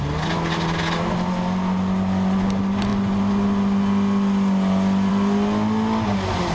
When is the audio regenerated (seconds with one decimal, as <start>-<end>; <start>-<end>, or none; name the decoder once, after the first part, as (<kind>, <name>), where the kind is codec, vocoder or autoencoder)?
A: none